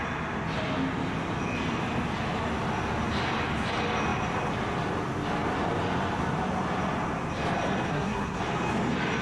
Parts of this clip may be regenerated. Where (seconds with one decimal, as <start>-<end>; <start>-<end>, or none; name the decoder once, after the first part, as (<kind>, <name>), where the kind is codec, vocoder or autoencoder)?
7.9-8.4 (codec, SNAC)